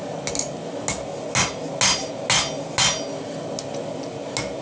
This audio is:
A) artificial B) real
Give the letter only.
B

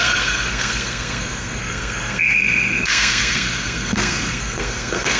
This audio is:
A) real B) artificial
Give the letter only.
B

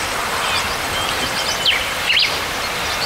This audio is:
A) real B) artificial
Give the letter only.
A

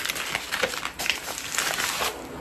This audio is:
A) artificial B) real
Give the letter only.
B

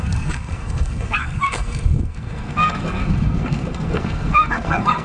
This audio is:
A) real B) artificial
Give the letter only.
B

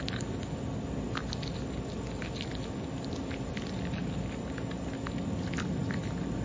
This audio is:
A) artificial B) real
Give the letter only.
B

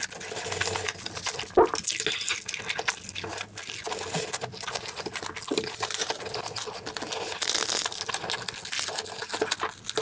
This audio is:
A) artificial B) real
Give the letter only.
B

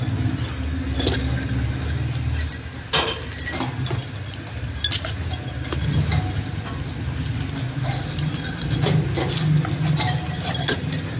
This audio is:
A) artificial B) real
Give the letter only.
B